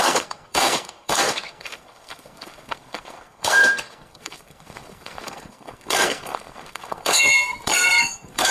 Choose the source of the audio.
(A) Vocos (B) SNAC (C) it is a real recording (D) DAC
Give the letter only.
B